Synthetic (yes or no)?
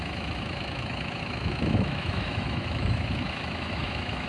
yes